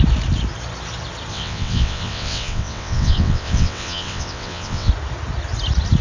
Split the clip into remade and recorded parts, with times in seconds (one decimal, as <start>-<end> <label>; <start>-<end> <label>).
0.0-1.3 recorded; 1.3-4.9 remade; 4.9-6.0 recorded